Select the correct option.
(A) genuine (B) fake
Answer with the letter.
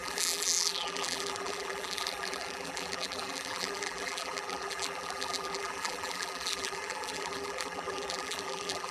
B